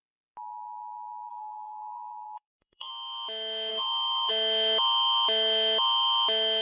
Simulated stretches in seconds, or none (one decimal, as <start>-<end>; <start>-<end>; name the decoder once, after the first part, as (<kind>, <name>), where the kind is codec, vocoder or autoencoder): 1.3-2.9 (codec, SNAC); 3.7-4.3